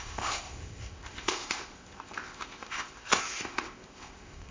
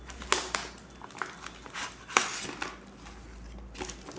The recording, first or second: second